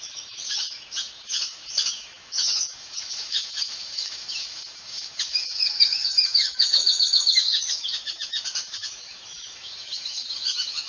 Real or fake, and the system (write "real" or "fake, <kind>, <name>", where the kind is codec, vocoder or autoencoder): fake, autoencoder, DAC-VAE